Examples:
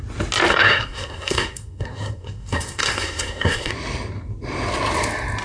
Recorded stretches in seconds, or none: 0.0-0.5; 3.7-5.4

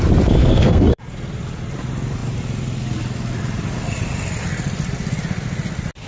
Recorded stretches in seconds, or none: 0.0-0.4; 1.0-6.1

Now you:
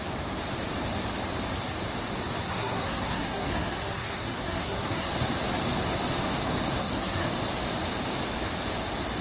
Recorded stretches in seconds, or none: 0.0-2.4; 5.1-6.8; 7.3-9.2

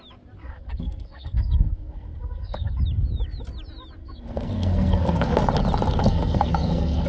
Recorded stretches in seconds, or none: 0.0-0.4; 2.8-4.0; 5.4-6.0